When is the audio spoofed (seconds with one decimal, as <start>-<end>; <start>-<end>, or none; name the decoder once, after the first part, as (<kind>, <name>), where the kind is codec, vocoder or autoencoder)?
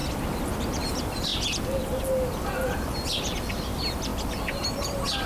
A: 0.6-1.3 (vocoder, BigVGAN v2); 3.5-4.1